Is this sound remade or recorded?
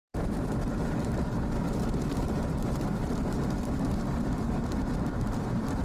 remade